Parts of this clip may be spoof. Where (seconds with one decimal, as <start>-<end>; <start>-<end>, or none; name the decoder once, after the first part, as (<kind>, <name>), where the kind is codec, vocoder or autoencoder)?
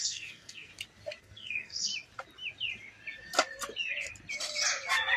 0.0-0.7 (codec, SNAC); 1.2-1.9